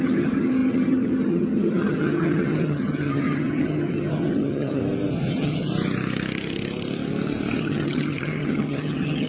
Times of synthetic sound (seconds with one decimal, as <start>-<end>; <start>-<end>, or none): 0.0-4.8; 5.3-5.7; 7.6-9.3